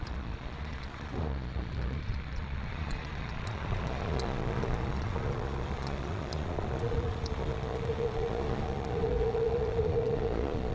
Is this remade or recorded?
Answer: remade